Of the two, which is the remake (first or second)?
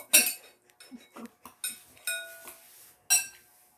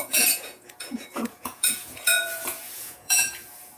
second